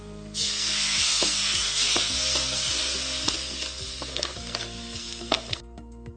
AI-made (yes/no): yes